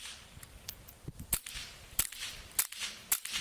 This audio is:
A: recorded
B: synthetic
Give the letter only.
A